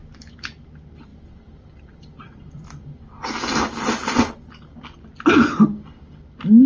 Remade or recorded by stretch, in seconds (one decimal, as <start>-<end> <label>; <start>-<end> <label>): 0.0-6.7 recorded